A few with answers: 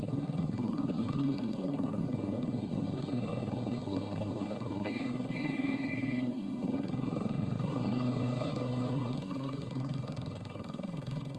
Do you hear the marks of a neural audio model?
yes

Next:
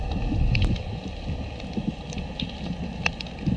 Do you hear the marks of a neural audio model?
no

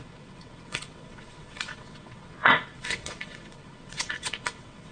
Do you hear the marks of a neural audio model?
yes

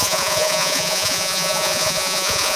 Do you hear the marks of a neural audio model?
yes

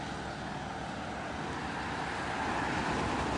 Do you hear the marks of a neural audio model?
no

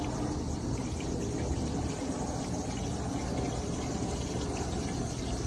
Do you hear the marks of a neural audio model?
no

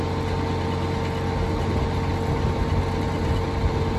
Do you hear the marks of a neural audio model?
no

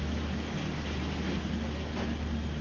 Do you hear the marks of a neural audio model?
no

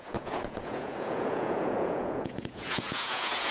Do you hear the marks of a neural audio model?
yes